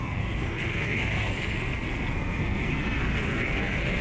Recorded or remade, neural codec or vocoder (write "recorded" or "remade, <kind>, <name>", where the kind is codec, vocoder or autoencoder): remade, codec, SNAC